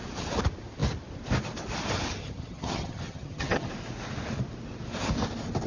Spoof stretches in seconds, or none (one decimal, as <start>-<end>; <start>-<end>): 2.2-3.7